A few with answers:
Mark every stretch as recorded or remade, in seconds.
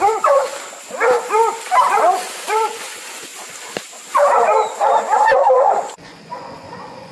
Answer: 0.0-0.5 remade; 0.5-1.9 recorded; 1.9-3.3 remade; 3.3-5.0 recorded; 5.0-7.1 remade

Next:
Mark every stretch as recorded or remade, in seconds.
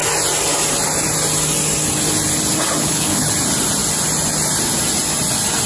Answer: 0.0-2.8 recorded; 2.8-3.3 remade; 3.3-5.7 recorded